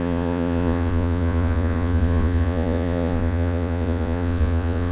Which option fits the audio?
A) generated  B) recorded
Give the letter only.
A